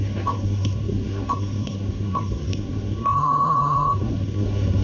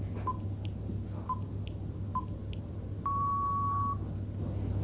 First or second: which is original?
second